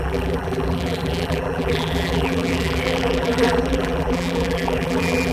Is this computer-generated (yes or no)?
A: yes